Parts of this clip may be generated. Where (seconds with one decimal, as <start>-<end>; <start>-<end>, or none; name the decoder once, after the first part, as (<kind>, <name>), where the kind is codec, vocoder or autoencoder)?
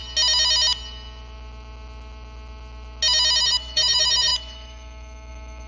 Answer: 3.4-5.7 (autoencoder, DAC-VAE)